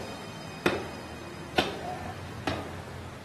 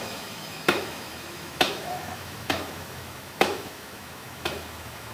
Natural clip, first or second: first